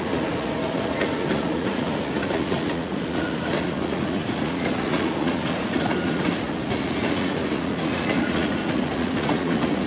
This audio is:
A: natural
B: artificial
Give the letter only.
B